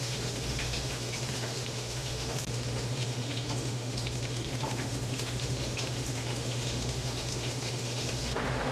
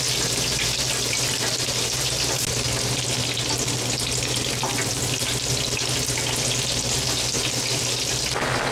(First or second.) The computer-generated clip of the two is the first